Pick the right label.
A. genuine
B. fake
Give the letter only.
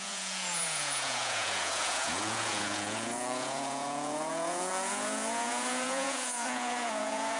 B